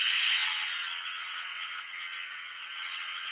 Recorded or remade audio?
remade